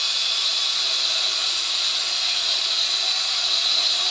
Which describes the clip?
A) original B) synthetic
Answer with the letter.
B